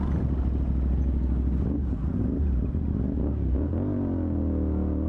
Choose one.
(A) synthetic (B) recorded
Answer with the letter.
B